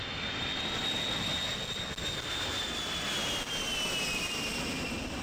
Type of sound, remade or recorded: recorded